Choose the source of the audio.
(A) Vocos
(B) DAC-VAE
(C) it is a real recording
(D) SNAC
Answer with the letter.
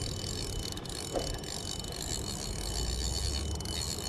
C